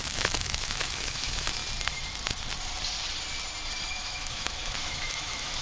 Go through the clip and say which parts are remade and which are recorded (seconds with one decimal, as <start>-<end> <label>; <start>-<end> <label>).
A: 0.0-1.6 remade; 1.6-3.9 recorded; 3.9-5.6 remade